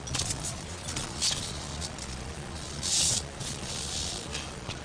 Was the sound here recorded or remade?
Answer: remade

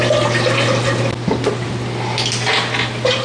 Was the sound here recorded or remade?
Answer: recorded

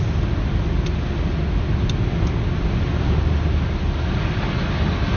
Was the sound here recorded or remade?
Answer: recorded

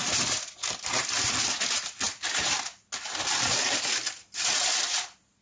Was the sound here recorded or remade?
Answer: recorded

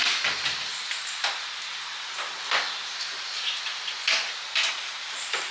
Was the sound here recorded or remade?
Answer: recorded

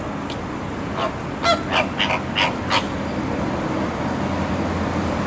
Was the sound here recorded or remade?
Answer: recorded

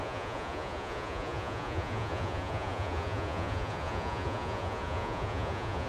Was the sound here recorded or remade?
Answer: remade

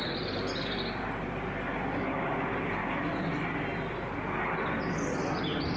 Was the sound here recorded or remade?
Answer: recorded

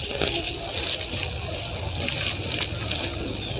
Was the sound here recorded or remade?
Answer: recorded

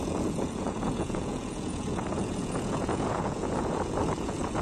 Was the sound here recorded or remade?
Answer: remade